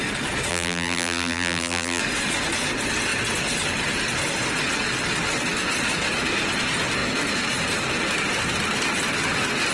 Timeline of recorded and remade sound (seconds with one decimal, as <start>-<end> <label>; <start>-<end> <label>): 0.0-0.5 recorded; 0.5-2.0 remade; 2.0-9.7 recorded